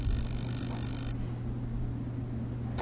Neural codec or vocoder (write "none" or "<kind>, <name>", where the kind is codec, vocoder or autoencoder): none